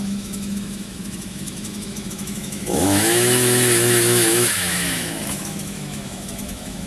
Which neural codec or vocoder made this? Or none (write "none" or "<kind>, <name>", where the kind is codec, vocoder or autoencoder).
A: autoencoder, DAC-VAE